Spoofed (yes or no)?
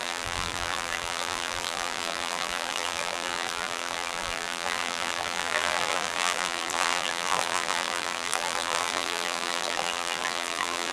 yes